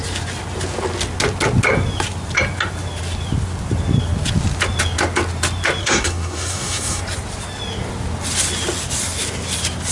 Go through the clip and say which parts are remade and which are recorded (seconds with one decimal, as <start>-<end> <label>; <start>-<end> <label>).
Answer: 0.0-5.8 recorded; 5.8-7.0 remade; 7.0-9.9 recorded